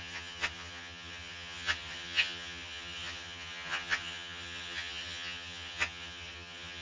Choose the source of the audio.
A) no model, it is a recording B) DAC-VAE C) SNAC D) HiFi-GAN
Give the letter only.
D